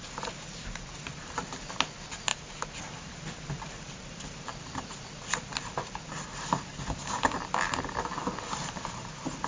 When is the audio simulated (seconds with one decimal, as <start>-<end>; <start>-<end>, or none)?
none